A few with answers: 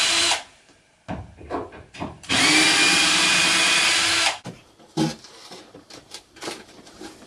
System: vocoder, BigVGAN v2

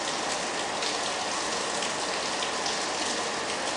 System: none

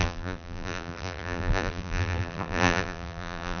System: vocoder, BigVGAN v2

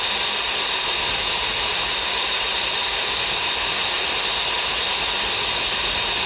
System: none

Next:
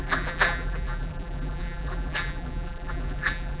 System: vocoder, BigVGAN v2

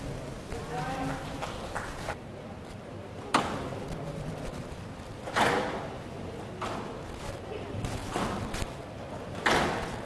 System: none